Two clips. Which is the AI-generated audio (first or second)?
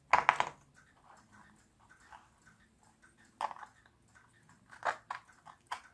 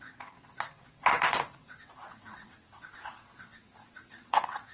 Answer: second